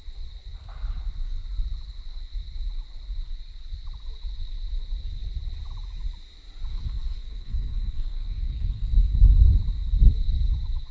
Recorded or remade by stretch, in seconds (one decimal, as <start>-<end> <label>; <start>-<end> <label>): 0.0-6.7 recorded; 6.7-9.1 remade; 9.1-10.9 recorded